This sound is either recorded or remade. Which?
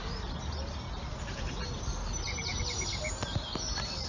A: recorded